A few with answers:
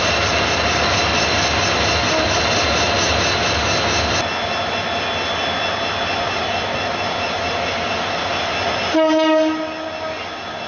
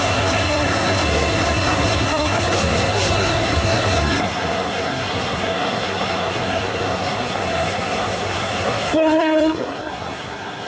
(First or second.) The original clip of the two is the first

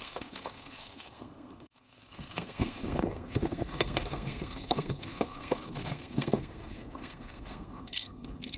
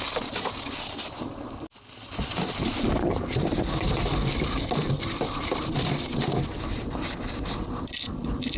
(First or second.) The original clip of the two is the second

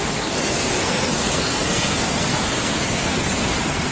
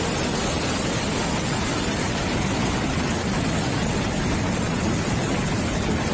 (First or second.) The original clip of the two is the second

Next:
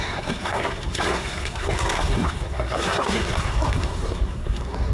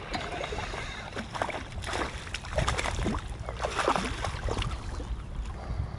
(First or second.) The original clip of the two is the second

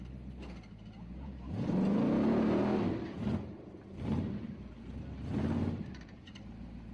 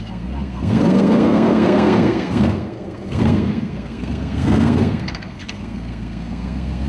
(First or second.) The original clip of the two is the first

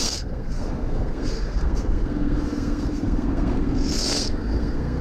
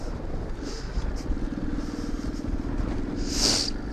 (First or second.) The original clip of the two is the second